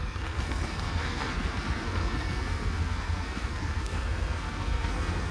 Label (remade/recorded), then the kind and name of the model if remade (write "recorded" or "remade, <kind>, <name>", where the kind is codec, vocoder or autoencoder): remade, codec, SNAC